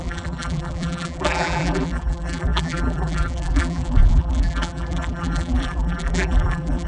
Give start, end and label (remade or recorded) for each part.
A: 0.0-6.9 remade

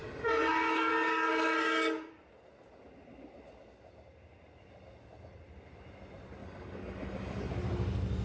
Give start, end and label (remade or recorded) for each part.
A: 0.0-2.1 remade; 2.1-6.4 recorded; 6.4-7.5 remade; 7.5-8.2 recorded

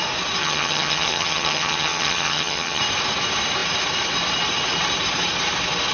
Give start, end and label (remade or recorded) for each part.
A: 0.0-0.4 recorded; 0.4-2.8 remade; 2.8-5.9 recorded

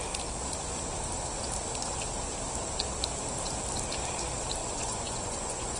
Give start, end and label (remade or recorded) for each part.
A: 0.0-4.6 recorded; 4.6-5.8 remade